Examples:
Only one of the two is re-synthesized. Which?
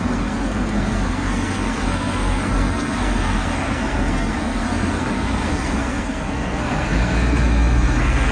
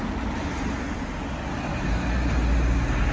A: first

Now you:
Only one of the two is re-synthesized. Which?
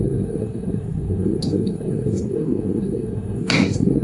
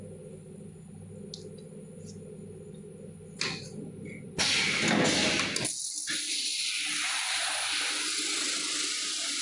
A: first